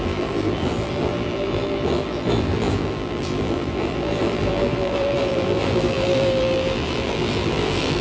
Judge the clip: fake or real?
fake